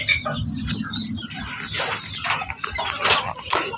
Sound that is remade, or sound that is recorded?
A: recorded